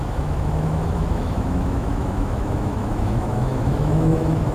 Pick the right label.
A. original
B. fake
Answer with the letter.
B